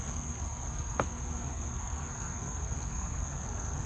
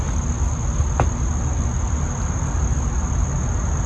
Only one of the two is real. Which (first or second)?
second